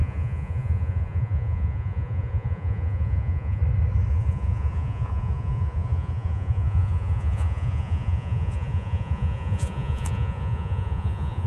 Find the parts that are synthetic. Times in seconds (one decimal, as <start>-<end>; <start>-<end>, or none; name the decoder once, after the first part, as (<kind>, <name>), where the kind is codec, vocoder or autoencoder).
0.0-3.6 (vocoder, Vocos); 4.1-11.5